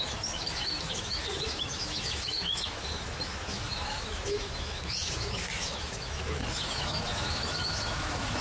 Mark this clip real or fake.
fake